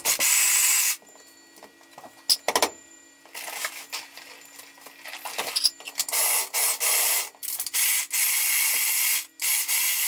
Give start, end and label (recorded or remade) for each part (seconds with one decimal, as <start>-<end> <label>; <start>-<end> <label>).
0.0-10.1 recorded